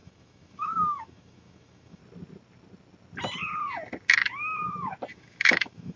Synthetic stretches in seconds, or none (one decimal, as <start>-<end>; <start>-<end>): 0.0-2.0; 5.1-6.0